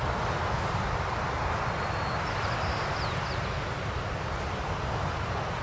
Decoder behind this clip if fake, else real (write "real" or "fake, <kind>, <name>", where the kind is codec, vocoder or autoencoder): real